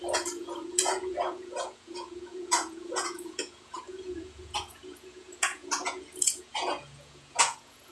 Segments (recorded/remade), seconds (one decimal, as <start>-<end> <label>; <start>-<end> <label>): 0.0-7.9 remade